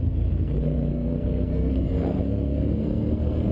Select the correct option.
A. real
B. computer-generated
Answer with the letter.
B